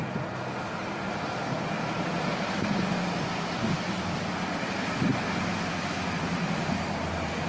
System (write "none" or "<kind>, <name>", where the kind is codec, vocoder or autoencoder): none